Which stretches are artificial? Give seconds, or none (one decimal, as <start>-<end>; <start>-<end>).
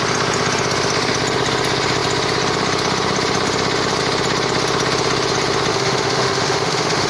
5.7-7.1